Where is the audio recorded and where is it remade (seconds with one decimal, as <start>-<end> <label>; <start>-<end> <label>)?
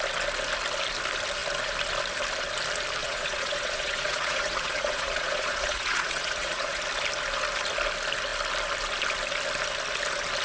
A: 0.0-3.0 recorded; 3.0-6.8 remade; 6.8-10.4 recorded